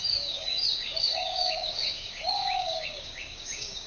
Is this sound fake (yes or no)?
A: yes